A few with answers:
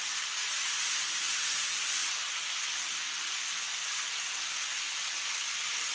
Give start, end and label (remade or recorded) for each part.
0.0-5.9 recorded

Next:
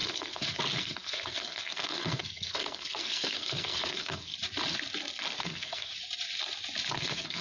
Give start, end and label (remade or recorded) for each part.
0.0-4.3 remade; 4.3-5.4 recorded; 5.4-5.9 remade; 5.9-6.9 recorded; 6.9-7.4 remade

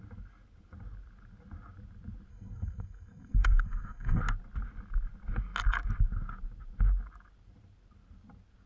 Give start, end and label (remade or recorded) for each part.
0.0-2.3 recorded; 2.3-4.2 remade; 4.2-8.7 recorded

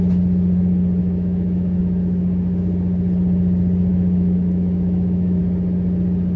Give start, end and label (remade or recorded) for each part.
0.0-1.0 recorded; 1.0-1.8 remade; 1.8-3.9 recorded; 3.9-5.4 remade; 5.4-6.4 recorded

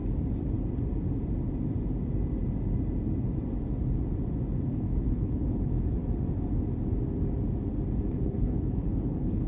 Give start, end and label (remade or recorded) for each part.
0.0-4.7 recorded; 4.7-6.0 remade; 6.0-8.1 recorded; 8.1-9.5 remade